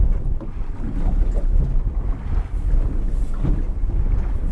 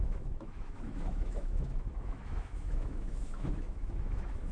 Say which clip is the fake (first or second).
second